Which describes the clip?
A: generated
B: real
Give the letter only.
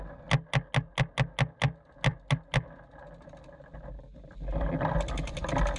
B